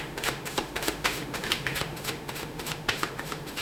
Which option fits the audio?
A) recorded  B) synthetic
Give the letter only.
B